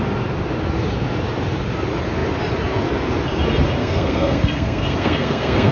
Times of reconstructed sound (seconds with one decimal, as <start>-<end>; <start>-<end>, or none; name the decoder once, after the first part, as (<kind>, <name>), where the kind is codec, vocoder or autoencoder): 3.8-5.7 (codec, SNAC)